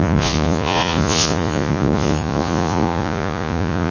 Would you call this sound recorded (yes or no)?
no